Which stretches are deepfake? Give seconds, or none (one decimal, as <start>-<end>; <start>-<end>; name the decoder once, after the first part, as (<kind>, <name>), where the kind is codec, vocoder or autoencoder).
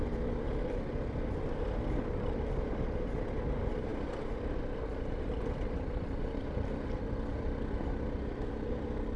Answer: none